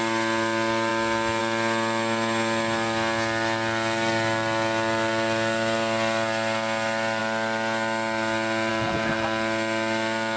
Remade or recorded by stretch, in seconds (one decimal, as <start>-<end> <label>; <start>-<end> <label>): 0.0-10.4 recorded

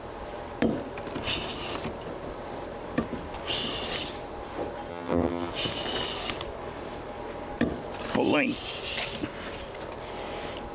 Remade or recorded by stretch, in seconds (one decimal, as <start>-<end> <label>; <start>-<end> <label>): 0.0-4.9 recorded; 4.9-5.5 remade; 5.5-10.7 recorded